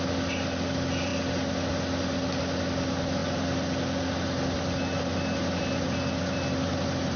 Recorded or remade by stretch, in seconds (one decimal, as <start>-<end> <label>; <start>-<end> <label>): 0.0-7.2 recorded